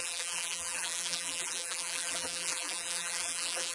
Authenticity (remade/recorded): remade